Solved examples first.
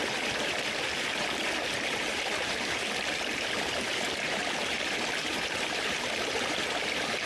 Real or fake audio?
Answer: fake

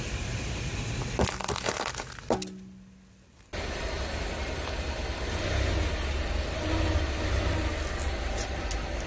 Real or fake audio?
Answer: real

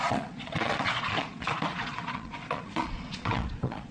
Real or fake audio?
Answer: fake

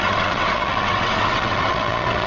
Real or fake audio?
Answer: fake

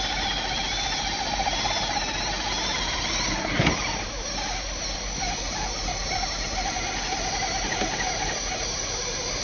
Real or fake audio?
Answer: real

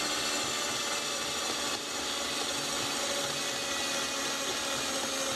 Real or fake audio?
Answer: real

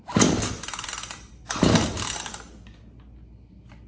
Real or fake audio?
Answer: real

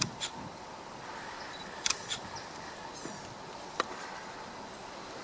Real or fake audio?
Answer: real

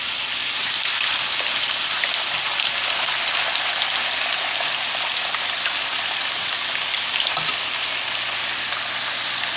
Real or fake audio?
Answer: real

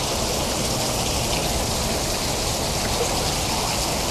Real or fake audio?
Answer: real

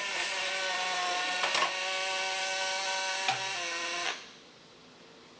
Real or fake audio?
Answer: real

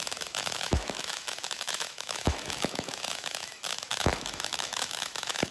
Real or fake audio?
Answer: fake